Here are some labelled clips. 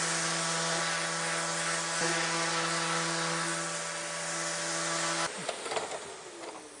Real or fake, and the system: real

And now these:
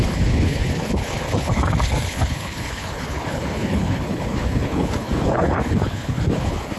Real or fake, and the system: fake, codec, HILCodec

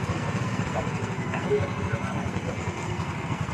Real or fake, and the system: fake, codec, SNAC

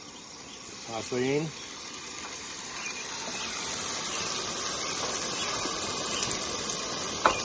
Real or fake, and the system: fake, vocoder, BigVGAN v2